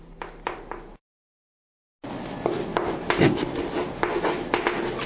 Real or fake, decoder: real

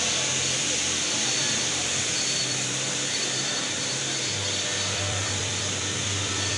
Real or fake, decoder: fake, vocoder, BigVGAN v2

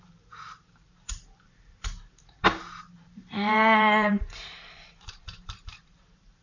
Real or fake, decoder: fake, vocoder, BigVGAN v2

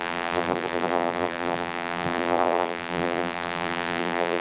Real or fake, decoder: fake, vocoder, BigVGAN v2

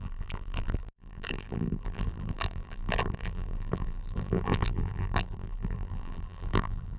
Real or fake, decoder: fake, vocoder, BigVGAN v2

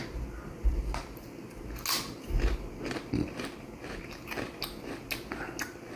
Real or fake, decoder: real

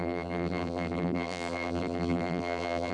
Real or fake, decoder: fake, vocoder, BigVGAN v2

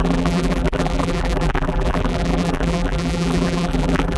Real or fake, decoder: fake, vocoder, BigVGAN v2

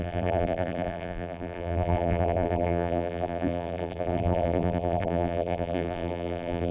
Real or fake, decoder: fake, vocoder, BigVGAN v2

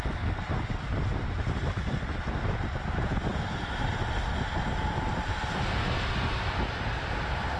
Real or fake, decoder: real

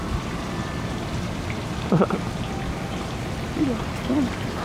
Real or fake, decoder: fake, vocoder, BigVGAN v2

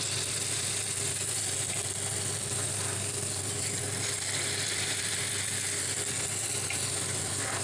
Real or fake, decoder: real